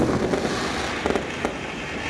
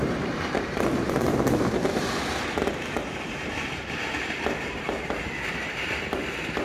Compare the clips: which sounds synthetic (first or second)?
second